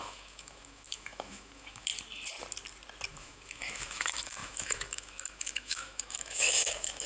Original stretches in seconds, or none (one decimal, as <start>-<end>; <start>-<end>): 1.9-3.1